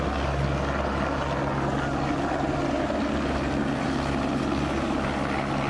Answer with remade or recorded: recorded